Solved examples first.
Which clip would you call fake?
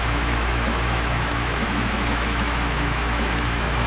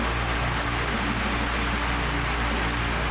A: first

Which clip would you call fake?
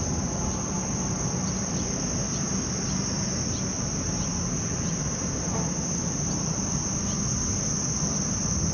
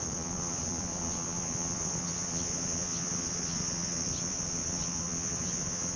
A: second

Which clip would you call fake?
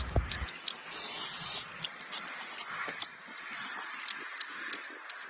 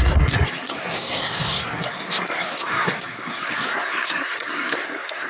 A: second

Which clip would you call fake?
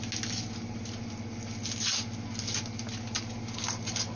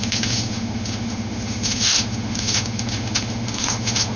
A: second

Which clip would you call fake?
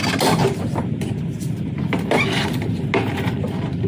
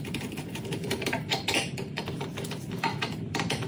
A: second